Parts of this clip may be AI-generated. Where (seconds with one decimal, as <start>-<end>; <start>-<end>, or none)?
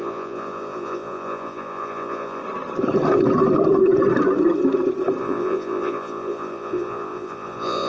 0.0-2.4; 5.2-7.9